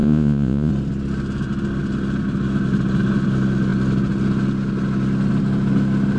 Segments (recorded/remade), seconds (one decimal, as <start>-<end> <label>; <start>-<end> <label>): 0.0-0.7 remade; 0.7-6.2 recorded